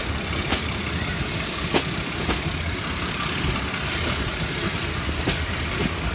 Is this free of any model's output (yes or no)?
yes